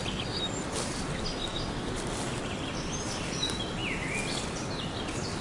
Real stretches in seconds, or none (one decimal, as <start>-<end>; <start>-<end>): 1.5-2.3; 3.8-5.4